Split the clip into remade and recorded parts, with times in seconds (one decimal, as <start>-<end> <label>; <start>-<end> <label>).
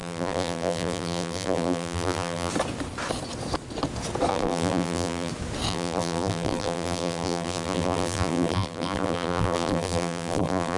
0.0-2.5 remade; 2.5-4.3 recorded; 4.3-5.3 remade; 5.3-5.7 recorded; 5.7-10.8 remade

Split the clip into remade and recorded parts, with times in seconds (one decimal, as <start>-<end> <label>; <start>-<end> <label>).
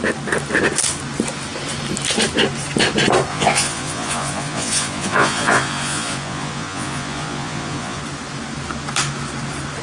0.0-3.3 recorded; 3.3-8.0 remade; 8.0-9.8 recorded